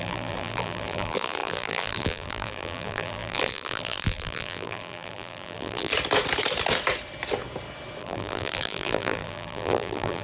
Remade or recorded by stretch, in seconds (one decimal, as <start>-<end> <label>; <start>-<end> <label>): 0.0-5.9 remade; 5.9-8.0 recorded; 8.0-10.2 remade